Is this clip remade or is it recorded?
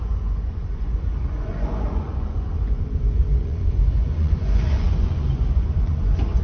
remade